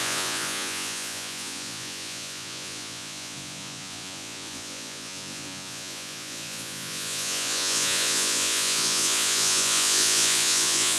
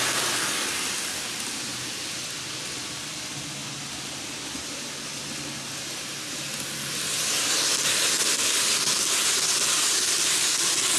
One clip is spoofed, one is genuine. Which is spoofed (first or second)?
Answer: first